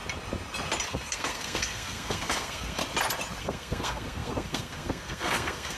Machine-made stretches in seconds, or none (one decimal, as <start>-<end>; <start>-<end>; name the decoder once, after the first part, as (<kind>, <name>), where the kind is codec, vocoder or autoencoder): 0.9-2.8 (codec, SNAC); 3.4-5.8